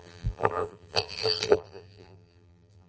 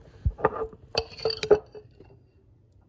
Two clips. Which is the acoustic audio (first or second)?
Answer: second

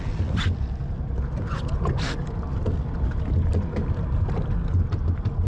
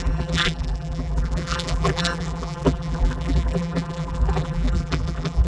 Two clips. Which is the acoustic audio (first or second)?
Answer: first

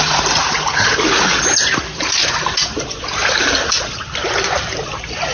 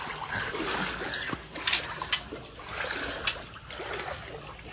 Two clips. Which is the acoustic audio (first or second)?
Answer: second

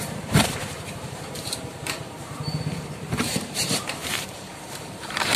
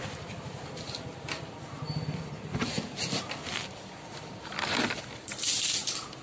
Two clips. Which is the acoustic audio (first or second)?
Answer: second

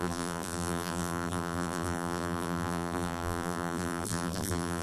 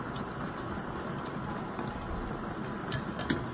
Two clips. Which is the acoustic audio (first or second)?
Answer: second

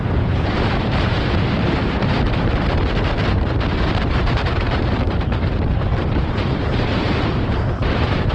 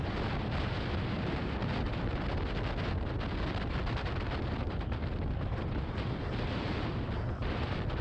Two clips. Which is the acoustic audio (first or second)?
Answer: second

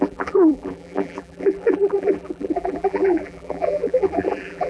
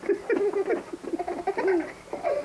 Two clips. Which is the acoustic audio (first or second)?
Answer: second